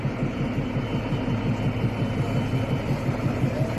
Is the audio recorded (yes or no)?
yes